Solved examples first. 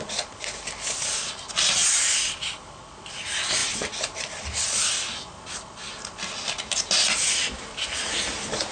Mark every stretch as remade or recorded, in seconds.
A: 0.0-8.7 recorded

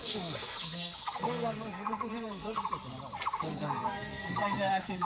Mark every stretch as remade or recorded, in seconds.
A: 0.0-2.6 remade; 2.6-3.4 recorded; 3.4-5.1 remade

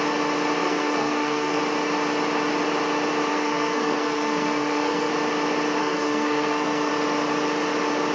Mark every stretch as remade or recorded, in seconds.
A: 0.0-0.6 recorded; 0.6-1.6 remade; 1.6-3.3 recorded; 3.3-5.1 remade; 5.1-5.8 recorded; 5.8-6.9 remade; 6.9-8.1 recorded

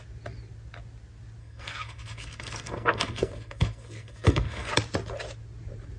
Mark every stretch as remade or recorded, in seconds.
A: 0.0-1.4 recorded; 1.4-4.7 remade; 4.7-6.0 recorded